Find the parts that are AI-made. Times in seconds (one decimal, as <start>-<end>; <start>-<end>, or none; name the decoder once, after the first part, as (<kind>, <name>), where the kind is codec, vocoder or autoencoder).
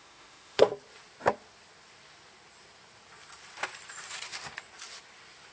0.0-0.7 (autoencoder, DAC-VAE)